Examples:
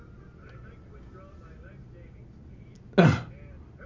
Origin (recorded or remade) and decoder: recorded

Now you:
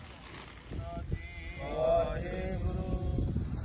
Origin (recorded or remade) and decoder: recorded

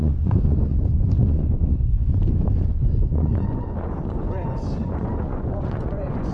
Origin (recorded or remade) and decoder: remade, vocoder, Vocos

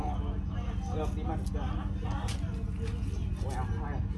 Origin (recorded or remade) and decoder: recorded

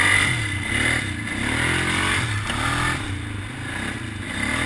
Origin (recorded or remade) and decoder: recorded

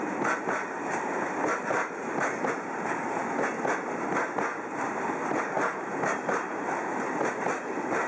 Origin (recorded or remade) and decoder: recorded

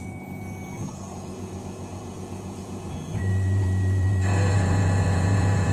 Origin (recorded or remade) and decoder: remade, vocoder, Vocos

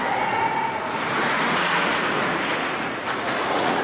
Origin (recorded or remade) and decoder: remade, vocoder, Vocos